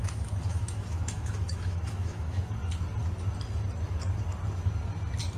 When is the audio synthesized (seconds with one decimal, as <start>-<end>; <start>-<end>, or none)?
0.0-2.5